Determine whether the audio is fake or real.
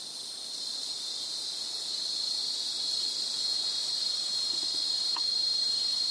real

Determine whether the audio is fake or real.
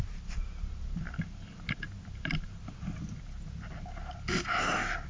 real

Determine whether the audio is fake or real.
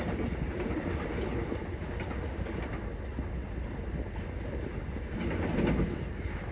real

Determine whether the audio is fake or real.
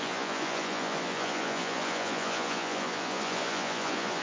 fake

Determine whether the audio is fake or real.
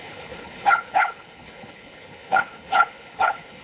fake